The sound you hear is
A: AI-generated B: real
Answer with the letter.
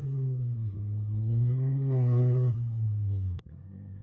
A